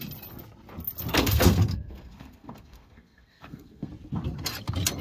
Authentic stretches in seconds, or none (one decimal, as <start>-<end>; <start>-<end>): 0.0-1.1; 3.9-5.0